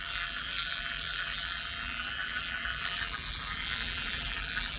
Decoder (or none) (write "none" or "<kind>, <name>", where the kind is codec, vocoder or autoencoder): vocoder, BigVGAN v2